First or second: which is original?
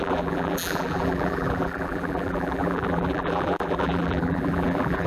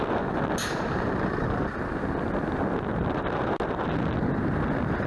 second